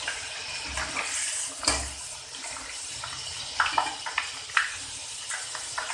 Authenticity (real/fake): real